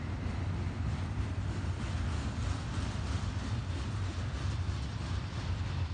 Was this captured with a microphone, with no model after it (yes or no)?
yes